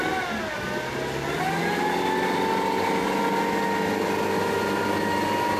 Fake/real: real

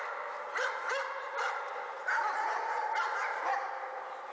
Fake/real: fake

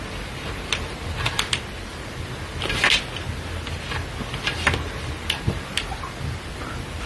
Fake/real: real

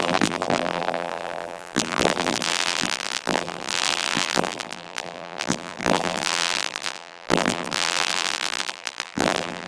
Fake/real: fake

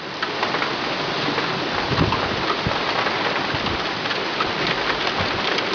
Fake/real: real